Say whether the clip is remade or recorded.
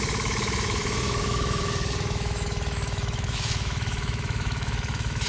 remade